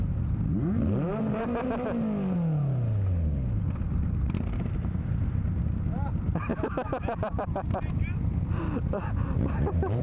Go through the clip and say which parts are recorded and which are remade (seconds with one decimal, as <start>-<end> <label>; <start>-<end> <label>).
0.0-6.5 recorded; 6.5-7.2 remade; 7.2-10.0 recorded